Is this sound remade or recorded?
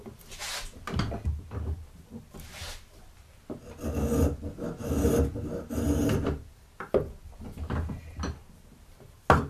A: recorded